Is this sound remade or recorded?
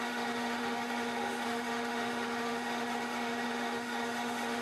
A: remade